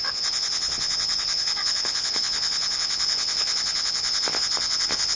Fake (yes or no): yes